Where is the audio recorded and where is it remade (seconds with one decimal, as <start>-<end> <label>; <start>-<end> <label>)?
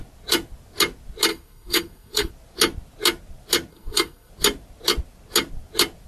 0.0-1.3 recorded; 1.3-2.3 remade; 2.3-3.7 recorded; 3.7-4.3 remade; 4.3-6.1 recorded